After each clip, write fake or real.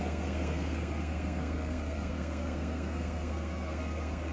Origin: fake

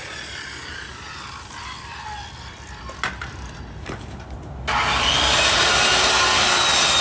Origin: real